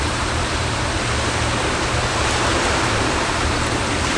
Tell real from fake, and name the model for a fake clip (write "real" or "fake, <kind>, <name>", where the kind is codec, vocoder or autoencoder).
fake, vocoder, BigVGAN v2